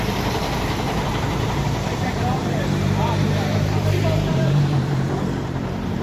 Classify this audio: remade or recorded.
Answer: remade